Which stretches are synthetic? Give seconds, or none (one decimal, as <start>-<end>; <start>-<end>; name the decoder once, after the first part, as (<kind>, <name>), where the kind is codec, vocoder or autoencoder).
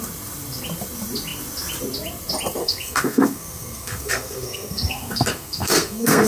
2.6-6.3 (codec, SNAC)